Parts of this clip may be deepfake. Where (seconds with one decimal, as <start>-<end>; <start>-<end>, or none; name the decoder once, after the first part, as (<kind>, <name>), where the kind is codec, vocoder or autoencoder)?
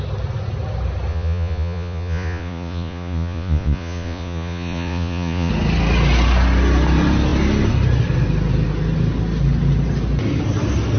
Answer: 1.1-5.5 (vocoder, Vocos)